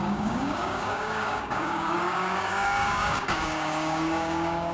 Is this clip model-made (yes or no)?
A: yes